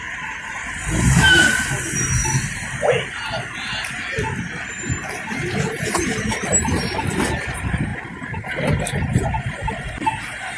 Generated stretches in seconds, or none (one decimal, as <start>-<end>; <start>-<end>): none